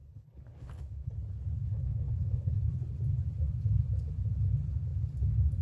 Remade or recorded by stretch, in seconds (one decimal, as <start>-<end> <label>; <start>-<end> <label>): 0.0-1.1 remade; 1.1-1.6 recorded; 1.6-2.7 remade; 2.7-5.6 recorded